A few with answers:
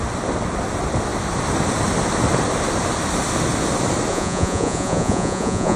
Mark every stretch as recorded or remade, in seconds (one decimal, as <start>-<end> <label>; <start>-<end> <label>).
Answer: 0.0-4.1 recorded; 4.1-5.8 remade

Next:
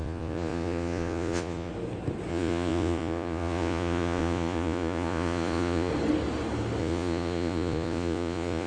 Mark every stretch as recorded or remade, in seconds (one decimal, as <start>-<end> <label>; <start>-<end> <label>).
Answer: 0.0-1.7 remade; 1.7-2.3 recorded; 2.3-5.9 remade; 5.9-6.8 recorded; 6.8-8.7 remade

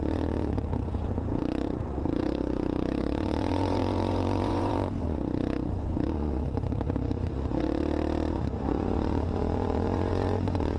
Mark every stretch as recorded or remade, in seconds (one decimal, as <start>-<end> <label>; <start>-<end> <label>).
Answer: 0.0-7.8 remade; 7.8-8.3 recorded; 8.3-10.8 remade

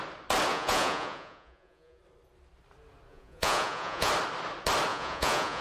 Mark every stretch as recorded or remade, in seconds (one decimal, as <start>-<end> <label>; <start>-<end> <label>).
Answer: 0.0-0.5 recorded; 0.5-2.0 remade; 2.0-3.1 recorded; 3.1-4.1 remade; 4.1-4.9 recorded; 4.9-5.6 remade